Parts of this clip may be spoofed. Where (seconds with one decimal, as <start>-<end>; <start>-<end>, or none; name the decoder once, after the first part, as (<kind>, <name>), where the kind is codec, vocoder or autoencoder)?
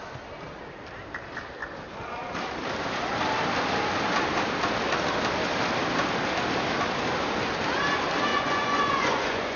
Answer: 8.3-9.6 (vocoder, Vocos)